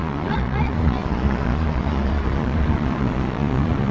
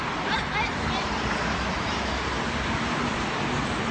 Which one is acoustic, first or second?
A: second